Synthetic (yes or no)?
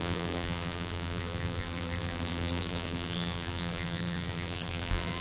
yes